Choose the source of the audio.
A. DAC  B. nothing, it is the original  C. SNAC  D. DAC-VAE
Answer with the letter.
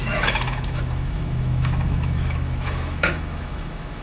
D